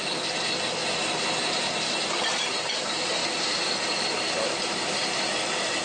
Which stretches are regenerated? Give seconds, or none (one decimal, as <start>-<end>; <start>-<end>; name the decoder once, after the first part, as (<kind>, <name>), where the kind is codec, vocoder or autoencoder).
0.0-0.8 (vocoder, BigVGAN v2); 2.2-5.8